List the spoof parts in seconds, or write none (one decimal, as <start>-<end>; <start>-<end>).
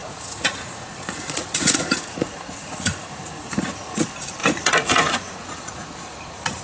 0.0-4.0; 4.4-6.6